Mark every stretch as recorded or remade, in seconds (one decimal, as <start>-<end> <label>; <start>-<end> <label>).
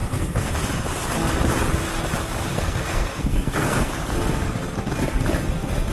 0.0-0.5 remade; 0.5-2.5 recorded; 2.5-3.9 remade; 3.9-5.9 recorded